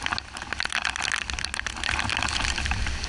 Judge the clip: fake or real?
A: real